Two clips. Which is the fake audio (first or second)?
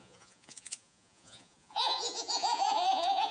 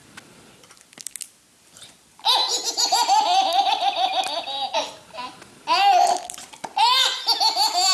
first